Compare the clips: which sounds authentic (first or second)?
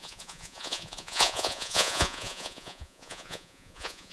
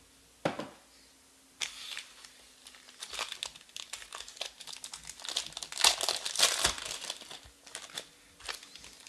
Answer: second